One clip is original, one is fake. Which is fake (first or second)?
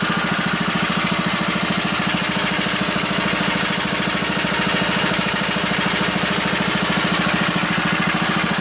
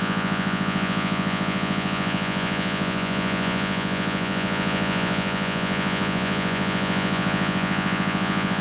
second